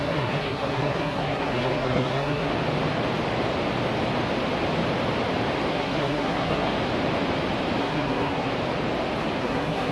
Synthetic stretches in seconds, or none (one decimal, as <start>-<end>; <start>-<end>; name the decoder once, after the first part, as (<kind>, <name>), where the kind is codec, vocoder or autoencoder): 0.0-2.5 (codec, SNAC); 5.7-6.7; 7.8-8.5; 9.4-9.9